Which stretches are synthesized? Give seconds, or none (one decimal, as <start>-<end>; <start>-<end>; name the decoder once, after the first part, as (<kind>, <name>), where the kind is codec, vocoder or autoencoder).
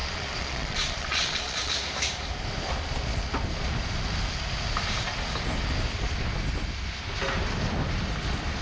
0.0-1.7 (vocoder, Vocos)